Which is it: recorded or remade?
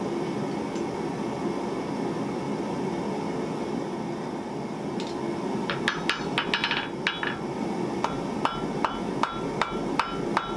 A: recorded